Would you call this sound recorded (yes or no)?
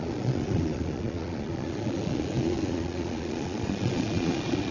no